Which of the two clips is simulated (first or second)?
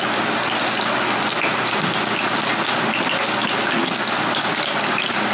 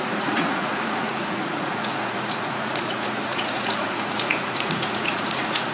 second